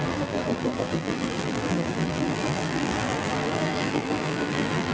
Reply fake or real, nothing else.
fake